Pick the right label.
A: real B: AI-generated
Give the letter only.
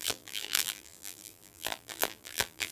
B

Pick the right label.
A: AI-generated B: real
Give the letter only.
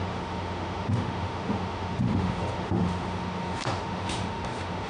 A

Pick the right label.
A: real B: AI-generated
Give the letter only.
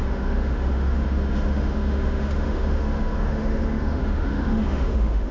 B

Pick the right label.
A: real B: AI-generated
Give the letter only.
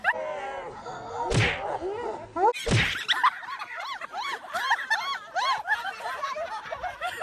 A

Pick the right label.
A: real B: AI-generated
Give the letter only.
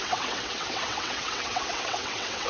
B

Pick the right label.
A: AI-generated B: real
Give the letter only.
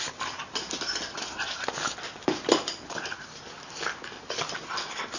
B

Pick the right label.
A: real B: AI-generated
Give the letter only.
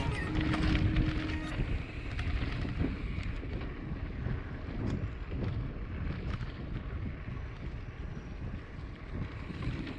A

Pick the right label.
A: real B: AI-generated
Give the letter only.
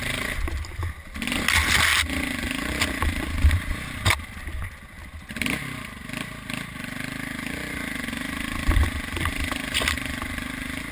A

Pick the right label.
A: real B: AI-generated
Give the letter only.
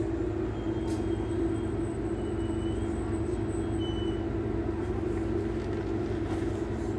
A